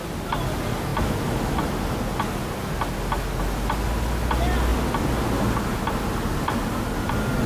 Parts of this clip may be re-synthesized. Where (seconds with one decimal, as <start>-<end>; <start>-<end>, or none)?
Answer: none